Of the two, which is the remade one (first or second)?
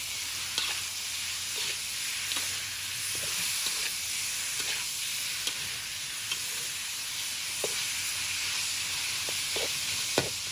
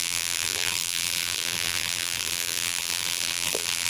second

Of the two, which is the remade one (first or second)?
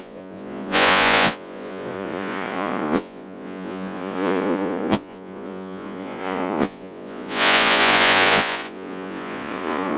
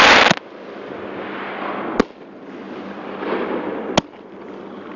first